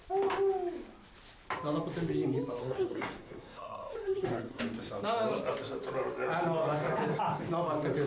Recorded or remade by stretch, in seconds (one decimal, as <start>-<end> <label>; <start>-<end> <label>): 0.0-2.6 recorded; 2.6-4.6 remade; 4.6-8.1 recorded